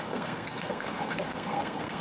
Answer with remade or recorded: remade